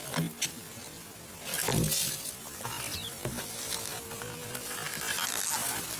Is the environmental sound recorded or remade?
recorded